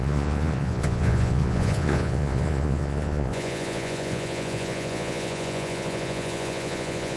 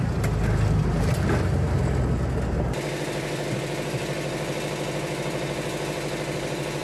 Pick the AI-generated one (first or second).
first